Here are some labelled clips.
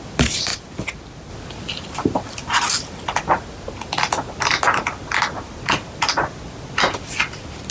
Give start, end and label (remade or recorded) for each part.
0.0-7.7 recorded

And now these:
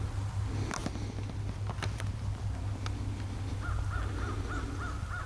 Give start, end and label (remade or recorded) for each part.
0.0-5.3 recorded

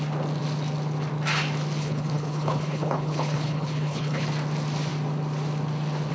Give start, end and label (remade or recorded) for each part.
0.0-1.8 recorded; 1.8-4.3 remade; 4.3-6.1 recorded

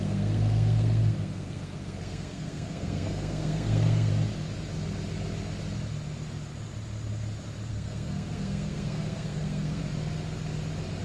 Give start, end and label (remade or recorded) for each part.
0.0-4.1 remade; 4.1-7.7 recorded; 7.7-9.8 remade; 9.8-11.0 recorded

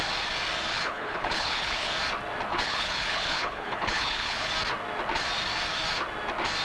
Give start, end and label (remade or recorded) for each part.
0.0-0.7 recorded; 0.7-1.9 remade; 1.9-2.5 recorded; 2.5-4.5 remade; 4.5-6.6 recorded

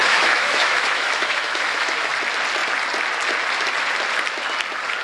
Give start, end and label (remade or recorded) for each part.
0.0-2.1 remade; 2.1-5.0 recorded

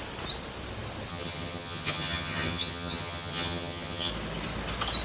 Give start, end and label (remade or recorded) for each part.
0.0-1.1 recorded; 1.1-4.1 remade; 4.1-5.0 recorded

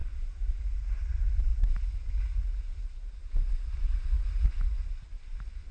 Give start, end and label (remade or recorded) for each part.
0.0-0.6 remade; 0.6-5.7 recorded